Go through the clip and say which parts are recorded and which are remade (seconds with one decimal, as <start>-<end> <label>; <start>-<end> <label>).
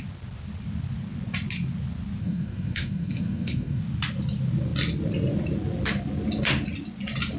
0.0-2.2 recorded; 2.2-3.8 remade; 3.8-7.4 recorded